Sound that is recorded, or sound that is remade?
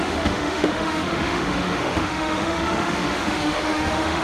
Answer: remade